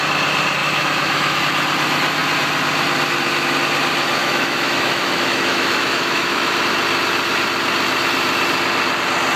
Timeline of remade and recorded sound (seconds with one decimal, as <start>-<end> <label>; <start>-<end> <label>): 0.0-0.6 recorded; 0.6-1.4 remade; 1.4-4.2 recorded; 4.2-6.6 remade; 6.6-9.4 recorded